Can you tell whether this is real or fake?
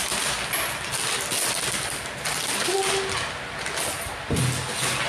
real